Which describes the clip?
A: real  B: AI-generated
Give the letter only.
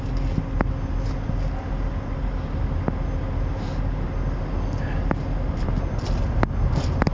A